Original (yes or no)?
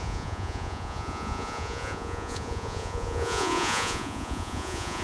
no